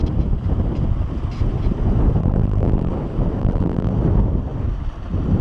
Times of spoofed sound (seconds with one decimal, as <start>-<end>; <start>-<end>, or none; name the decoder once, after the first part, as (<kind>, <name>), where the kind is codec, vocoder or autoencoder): 2.2-2.9 (vocoder, BigVGAN v2); 3.4-3.9

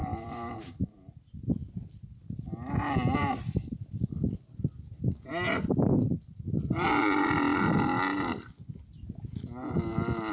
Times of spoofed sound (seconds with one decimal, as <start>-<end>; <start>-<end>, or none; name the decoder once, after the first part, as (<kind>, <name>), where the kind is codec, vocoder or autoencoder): 0.0-0.5 (vocoder, BigVGAN v2); 3.2-6.3

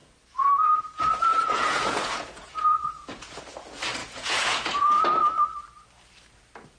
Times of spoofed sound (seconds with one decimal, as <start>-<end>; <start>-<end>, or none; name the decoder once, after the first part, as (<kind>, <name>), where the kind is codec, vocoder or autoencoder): 0.0-3.4 (vocoder, Vocos); 4.0-5.0

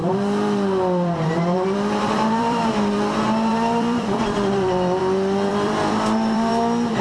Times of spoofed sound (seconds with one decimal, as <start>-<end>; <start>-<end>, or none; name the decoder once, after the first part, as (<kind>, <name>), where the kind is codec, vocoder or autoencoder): 0.0-2.7 (vocoder, BigVGAN v2); 3.5-5.0; 5.5-6.5